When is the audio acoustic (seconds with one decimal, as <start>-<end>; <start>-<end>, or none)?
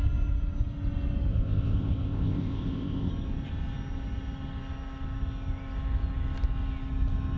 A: 0.0-1.3; 3.1-7.4